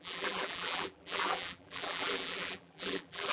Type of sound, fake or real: fake